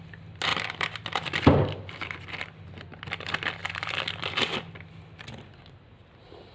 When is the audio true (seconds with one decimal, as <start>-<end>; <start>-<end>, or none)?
0.0-3.6; 4.9-6.5